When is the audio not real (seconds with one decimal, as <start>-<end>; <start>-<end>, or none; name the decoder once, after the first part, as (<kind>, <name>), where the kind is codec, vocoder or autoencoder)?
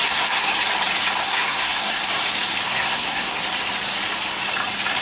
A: 0.0-0.5 (codec, SNAC); 1.2-2.0; 2.7-3.4